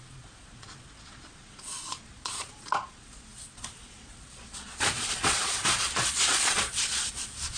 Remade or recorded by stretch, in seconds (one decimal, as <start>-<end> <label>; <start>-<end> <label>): 0.0-7.6 remade